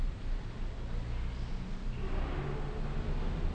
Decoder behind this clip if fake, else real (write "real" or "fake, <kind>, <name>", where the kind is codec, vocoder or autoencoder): real